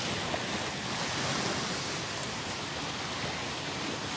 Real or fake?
real